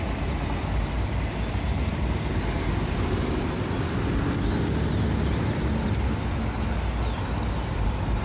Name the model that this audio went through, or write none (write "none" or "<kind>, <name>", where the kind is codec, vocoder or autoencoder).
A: none